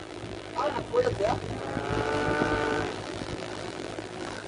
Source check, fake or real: fake